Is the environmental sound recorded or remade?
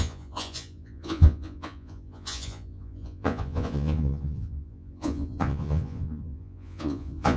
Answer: remade